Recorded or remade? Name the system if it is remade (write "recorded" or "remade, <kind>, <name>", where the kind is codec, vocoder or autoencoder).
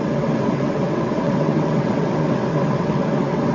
remade, vocoder, WaveNeXt